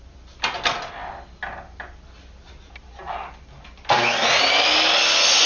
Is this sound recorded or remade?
recorded